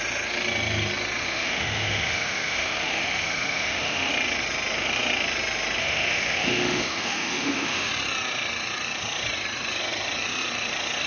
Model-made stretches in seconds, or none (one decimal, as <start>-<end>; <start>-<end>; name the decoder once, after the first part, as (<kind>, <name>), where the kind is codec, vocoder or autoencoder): 1.2-4.1 (autoencoder, DAC-VAE); 5.8-7.9